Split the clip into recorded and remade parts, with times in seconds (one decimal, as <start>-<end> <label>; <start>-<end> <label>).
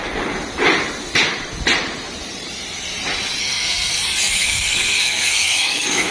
0.0-3.4 recorded; 3.4-6.1 remade